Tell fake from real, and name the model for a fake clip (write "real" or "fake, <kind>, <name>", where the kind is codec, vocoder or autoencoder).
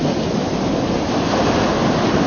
real